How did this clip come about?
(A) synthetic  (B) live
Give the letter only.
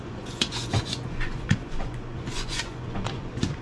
A